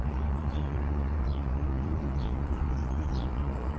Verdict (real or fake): fake